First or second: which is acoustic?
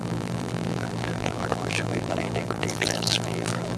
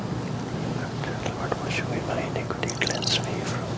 second